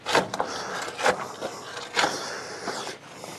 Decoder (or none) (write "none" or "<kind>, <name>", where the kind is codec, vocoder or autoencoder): none